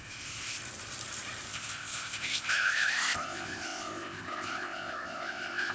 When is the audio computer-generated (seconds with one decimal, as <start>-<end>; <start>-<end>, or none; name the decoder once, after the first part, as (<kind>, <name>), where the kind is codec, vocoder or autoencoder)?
0.0-0.6 (codec, ZipCodec); 1.5-5.7